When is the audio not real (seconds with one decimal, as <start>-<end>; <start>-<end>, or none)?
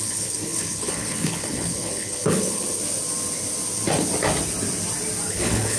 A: 0.0-2.8; 5.3-5.8